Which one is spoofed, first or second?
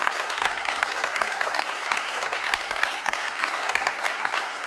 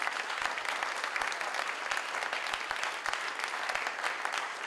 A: first